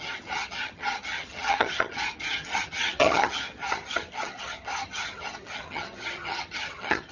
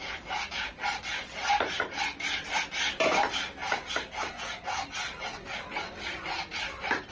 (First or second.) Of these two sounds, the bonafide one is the second